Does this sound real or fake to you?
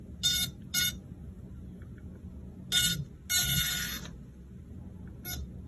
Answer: real